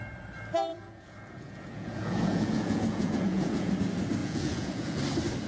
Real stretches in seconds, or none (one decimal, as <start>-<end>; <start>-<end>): 0.0-0.7; 3.7-4.2; 5.0-5.5